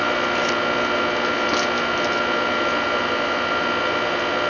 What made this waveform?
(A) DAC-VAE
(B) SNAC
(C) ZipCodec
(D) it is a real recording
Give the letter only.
D